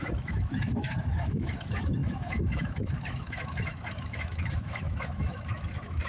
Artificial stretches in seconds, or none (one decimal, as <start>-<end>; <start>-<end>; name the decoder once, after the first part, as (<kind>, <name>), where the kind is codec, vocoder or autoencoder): 0.0-6.1 (autoencoder, DAC-VAE)